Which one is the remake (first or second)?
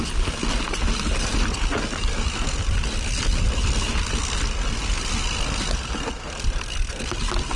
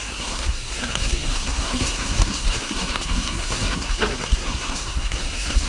second